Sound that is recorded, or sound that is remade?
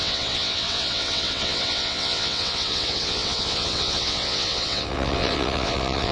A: remade